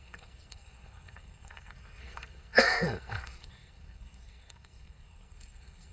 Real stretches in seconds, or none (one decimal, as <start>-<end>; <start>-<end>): none